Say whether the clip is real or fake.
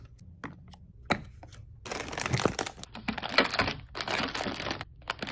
real